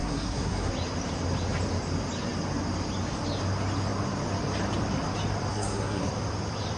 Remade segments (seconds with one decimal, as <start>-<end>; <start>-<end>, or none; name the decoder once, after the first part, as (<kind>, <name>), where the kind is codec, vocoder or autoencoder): 0.0-0.7 (codec, SNAC); 5.5-6.1